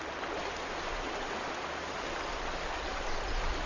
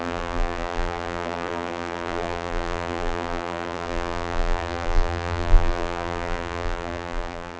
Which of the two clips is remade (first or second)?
second